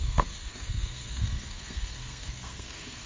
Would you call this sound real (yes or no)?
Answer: no